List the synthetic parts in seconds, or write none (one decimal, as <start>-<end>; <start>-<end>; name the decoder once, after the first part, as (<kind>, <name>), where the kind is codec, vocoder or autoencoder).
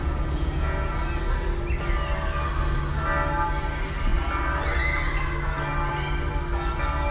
0.0-1.0 (vocoder, Vocos)